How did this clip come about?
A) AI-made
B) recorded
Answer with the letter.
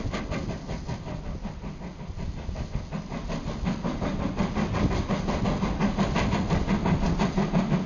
B